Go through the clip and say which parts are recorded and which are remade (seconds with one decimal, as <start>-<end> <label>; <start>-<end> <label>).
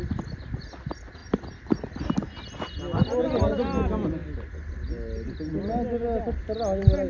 0.0-7.1 recorded